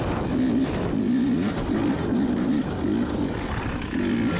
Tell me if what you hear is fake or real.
real